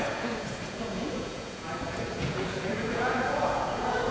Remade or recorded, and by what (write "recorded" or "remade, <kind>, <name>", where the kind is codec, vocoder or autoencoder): remade, vocoder, Vocos